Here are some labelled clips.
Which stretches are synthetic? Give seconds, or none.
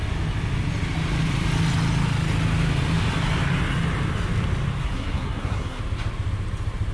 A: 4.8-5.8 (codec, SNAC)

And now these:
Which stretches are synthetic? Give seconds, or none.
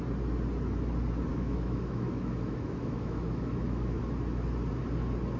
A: 1.3-4.0 (autoencoder, DAC-VAE)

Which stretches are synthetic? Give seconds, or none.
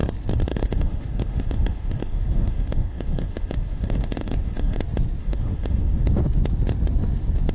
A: 0.5-4.8 (autoencoder, DAC-VAE); 5.2-6.1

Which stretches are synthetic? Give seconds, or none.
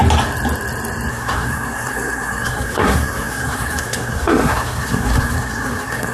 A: 1.1-6.1 (codec, SNAC)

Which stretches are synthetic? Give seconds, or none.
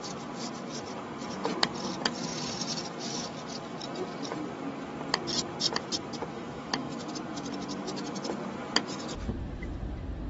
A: 6.3-7.1 (autoencoder, DAC-VAE)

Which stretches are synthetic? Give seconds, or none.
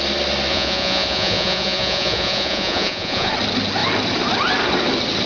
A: 0.5-3.3 (vocoder, Vocos)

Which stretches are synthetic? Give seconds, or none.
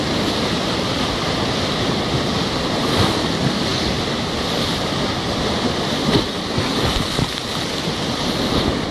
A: none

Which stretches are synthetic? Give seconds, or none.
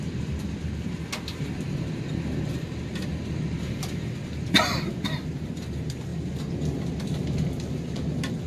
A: none